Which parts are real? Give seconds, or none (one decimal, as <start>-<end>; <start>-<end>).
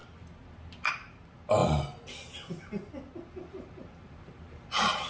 0.0-0.9; 1.6-3.5